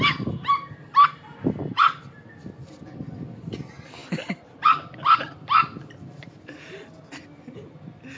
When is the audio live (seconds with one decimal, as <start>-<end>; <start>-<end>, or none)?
0.0-8.2